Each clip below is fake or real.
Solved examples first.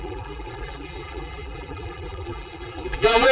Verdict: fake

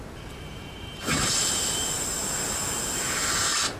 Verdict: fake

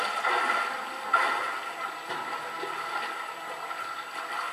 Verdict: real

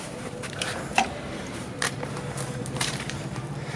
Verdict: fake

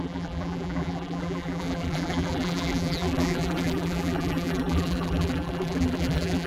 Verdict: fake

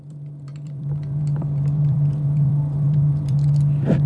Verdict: fake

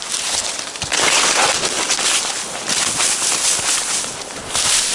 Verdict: real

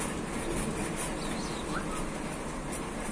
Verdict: real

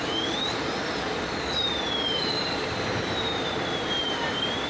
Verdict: fake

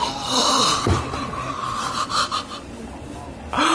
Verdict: real